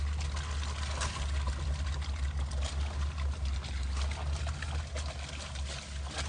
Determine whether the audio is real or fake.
real